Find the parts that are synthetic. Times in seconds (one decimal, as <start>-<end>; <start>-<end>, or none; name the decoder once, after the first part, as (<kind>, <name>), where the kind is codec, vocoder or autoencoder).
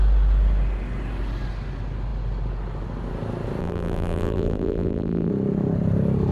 3.6-5.3 (vocoder, BigVGAN v2)